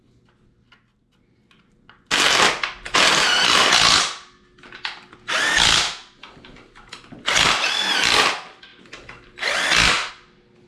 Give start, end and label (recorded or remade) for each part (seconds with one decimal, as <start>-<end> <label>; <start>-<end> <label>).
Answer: 0.0-10.7 recorded